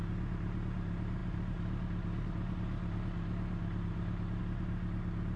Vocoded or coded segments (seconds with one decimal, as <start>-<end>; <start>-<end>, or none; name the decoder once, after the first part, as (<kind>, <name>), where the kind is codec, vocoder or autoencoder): none